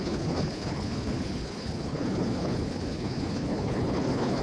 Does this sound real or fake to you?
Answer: fake